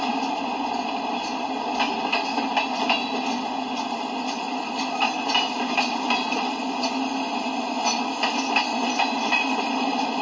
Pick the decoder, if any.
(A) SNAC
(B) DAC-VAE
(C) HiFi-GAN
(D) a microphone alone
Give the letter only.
D